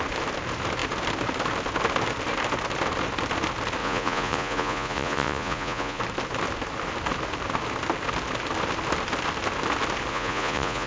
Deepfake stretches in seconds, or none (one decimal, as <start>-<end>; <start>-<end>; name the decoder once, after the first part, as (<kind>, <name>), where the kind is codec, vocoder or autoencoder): 3.8-6.0 (vocoder, Vocos); 10.1-10.9